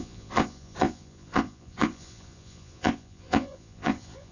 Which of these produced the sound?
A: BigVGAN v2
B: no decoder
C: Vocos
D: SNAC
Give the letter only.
C